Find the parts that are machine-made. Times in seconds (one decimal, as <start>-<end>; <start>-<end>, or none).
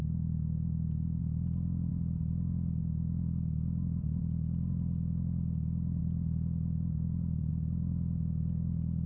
6.0-7.5